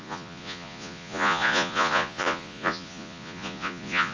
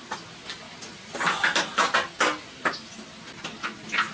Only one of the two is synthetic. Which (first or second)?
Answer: first